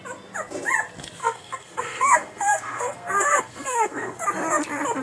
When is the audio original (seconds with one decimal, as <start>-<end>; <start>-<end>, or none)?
0.0-1.2; 4.2-5.0